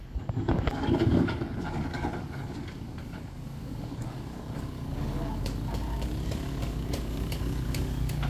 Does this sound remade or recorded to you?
remade